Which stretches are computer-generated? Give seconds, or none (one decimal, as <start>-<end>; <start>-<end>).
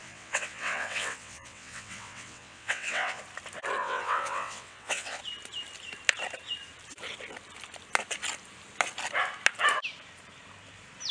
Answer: 0.0-3.2; 3.8-5.2